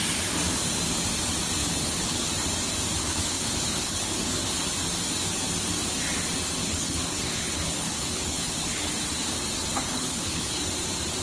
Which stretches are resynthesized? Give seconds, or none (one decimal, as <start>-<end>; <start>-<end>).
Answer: 1.6-2.3; 3.0-4.7; 6.6-8.9; 9.7-10.6